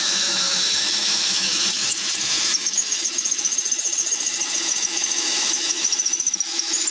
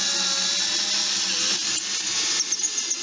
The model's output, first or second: first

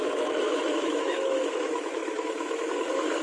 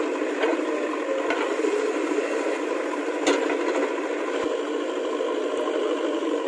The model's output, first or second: first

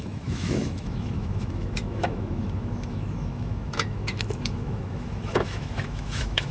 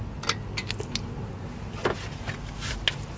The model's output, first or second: first